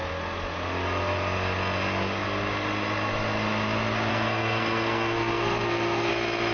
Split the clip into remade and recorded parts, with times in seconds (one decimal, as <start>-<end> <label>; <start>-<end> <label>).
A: 0.0-4.1 recorded; 4.1-6.1 remade; 6.1-6.5 recorded